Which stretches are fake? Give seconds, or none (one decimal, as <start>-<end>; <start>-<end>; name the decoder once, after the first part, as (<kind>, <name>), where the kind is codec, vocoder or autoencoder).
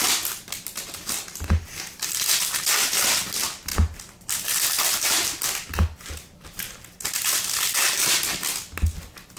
none